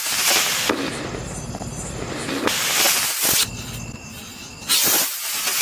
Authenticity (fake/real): real